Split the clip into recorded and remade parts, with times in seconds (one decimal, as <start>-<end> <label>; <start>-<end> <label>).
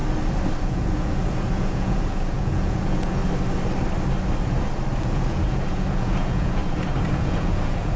0.0-0.6 recorded; 0.6-3.2 remade; 3.2-5.0 recorded; 5.0-6.6 remade; 6.6-7.1 recorded; 7.1-8.0 remade